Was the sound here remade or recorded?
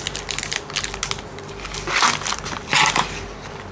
recorded